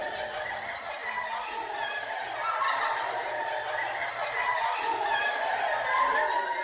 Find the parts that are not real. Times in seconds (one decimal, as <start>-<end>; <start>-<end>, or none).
none